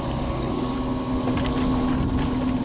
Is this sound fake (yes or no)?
no